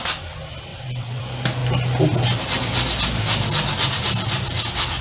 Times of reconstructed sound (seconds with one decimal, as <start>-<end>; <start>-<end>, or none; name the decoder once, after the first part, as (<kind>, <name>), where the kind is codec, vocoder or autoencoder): 0.7-1.2 (vocoder, WaveNeXt)